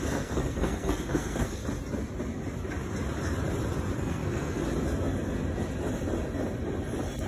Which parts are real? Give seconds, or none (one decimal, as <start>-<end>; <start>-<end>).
1.6-4.0; 4.6-7.3